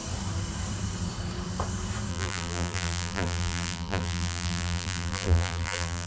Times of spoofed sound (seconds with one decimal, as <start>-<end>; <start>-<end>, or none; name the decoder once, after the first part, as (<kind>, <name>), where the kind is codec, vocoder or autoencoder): 2.1-6.1 (vocoder, BigVGAN v2)

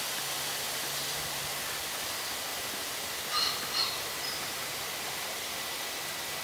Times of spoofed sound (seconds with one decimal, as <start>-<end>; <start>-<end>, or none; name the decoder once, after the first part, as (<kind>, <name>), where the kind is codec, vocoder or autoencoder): none

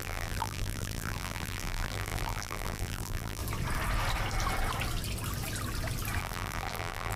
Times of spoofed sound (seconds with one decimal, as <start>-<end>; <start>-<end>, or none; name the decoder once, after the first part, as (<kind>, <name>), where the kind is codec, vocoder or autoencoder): 0.0-3.4 (vocoder, BigVGAN v2); 6.2-7.2

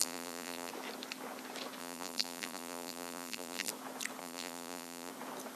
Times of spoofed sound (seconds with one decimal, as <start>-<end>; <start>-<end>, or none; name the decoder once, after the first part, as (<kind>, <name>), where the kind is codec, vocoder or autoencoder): 0.0-0.7 (vocoder, BigVGAN v2); 1.8-3.7; 4.2-5.1